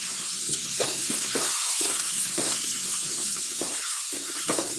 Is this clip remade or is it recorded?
remade